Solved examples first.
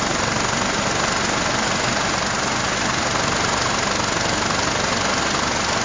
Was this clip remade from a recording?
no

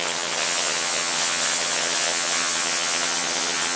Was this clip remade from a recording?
yes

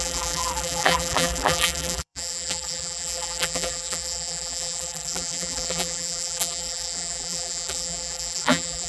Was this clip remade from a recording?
yes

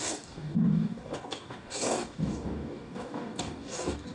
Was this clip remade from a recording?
yes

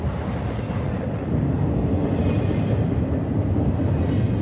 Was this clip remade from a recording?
no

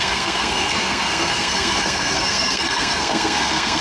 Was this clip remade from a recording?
yes